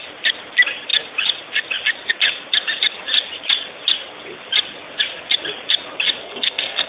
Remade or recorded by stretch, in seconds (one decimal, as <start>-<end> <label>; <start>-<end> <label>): 0.0-6.2 recorded; 6.2-6.9 remade